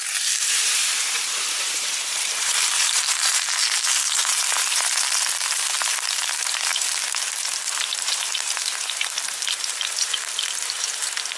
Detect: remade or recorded remade